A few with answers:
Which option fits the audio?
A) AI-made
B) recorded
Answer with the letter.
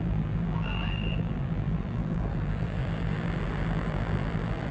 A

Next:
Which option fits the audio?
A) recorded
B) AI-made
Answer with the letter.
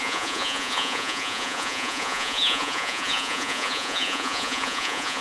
B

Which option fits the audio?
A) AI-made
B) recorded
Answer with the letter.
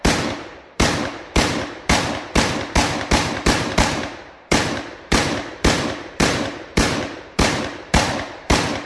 A